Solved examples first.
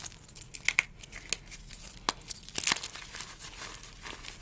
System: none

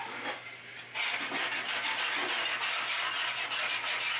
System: none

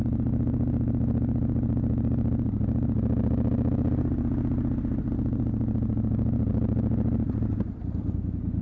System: none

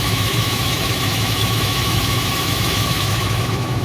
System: autoencoder, DAC-VAE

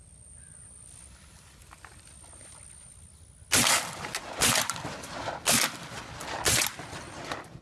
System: none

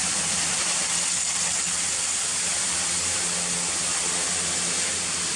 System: none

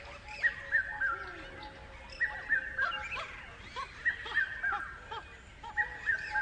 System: none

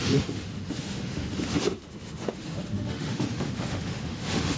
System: autoencoder, DAC-VAE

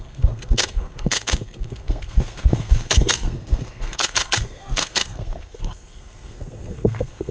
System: codec, SNAC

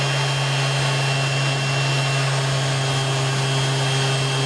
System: none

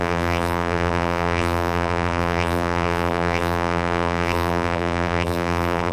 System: vocoder, BigVGAN v2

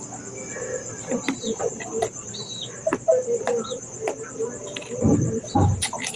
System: none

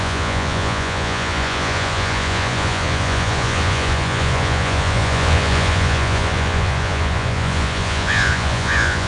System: vocoder, Vocos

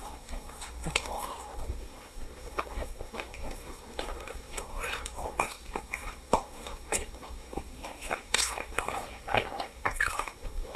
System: codec, SNAC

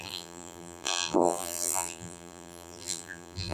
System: vocoder, BigVGAN v2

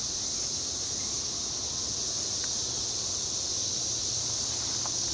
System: none